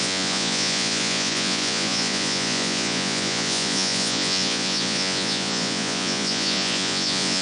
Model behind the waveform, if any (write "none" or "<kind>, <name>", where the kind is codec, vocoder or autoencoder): vocoder, Vocos